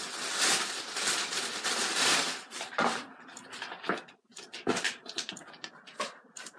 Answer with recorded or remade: remade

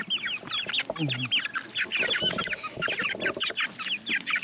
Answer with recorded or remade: recorded